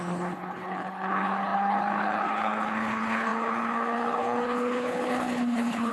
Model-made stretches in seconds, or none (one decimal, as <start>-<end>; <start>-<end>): 0.0-5.9